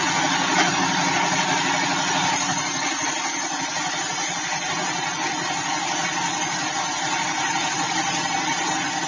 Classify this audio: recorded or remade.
recorded